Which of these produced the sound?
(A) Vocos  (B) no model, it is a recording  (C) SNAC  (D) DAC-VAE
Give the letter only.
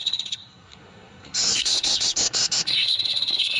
C